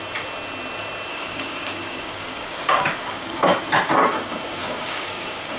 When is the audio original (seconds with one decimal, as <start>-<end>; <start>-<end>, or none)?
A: 0.0-1.1; 3.6-4.6